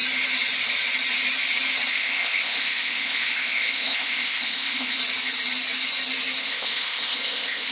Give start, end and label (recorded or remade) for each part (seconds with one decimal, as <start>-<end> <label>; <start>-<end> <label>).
0.0-1.9 recorded; 1.9-5.0 remade; 5.0-6.4 recorded; 6.4-7.7 remade